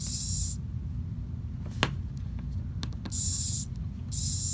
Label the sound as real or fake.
real